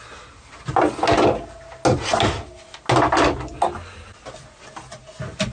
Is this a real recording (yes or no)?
yes